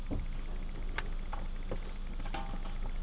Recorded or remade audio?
recorded